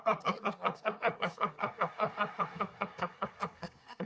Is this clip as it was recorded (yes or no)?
no